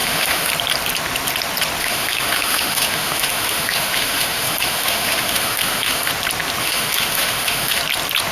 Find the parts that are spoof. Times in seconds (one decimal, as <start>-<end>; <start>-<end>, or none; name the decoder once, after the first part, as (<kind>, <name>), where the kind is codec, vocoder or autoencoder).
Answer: 0.0-0.5 (autoencoder, DAC-VAE); 1.8-6.1; 6.6-7.8